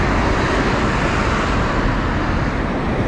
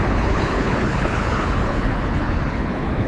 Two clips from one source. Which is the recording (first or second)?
first